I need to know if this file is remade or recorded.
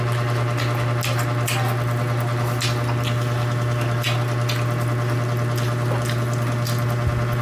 recorded